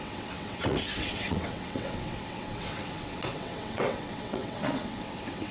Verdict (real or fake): fake